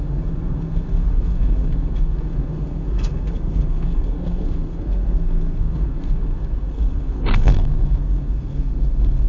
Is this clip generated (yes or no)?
yes